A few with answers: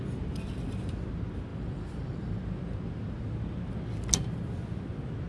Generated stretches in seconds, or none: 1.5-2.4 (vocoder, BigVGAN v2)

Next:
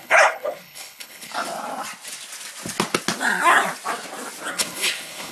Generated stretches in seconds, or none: 0.0-1.3 (codec, HILCodec); 4.5-5.3

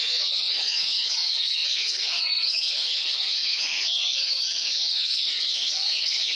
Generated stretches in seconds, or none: 0.0-6.3 (codec, SNAC)

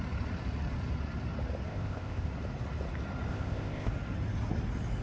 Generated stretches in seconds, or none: 1.7-2.3 (codec, ZipCodec); 3.3-3.9